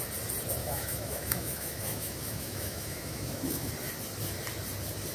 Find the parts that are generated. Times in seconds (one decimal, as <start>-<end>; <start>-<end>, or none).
0.6-3.7